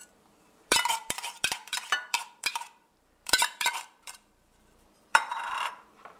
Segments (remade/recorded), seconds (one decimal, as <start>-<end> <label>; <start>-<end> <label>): 0.0-6.2 remade